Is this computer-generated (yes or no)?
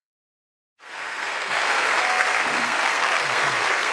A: yes